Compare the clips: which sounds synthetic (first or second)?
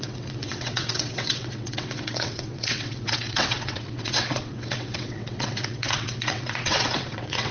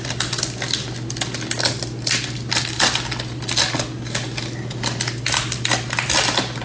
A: first